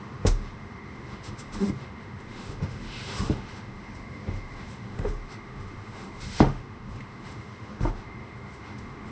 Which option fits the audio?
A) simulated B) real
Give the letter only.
A